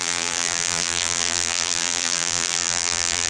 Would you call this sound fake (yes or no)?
yes